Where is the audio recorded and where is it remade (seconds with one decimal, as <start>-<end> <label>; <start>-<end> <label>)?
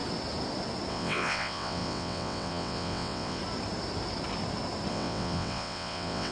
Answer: 0.0-0.9 recorded; 0.9-3.4 remade; 3.4-4.9 recorded; 4.9-6.3 remade